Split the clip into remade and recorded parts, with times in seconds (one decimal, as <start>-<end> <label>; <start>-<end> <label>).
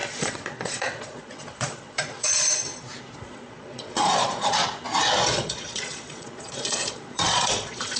0.0-2.6 remade; 2.6-3.2 recorded; 3.2-4.6 remade; 4.6-5.3 recorded; 5.3-8.0 remade